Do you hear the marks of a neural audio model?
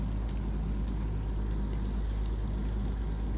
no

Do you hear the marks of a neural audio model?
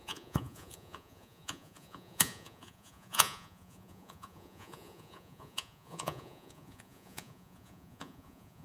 yes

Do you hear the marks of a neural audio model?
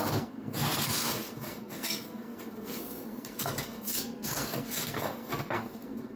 yes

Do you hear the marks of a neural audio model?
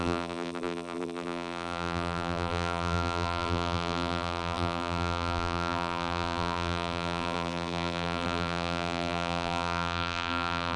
yes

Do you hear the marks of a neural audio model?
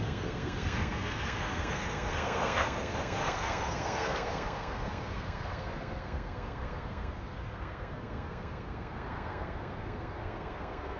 yes